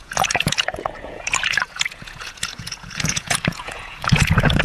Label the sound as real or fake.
fake